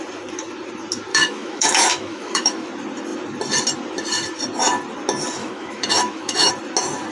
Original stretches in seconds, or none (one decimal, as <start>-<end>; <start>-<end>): 0.0-1.1; 2.7-5.4; 6.5-7.1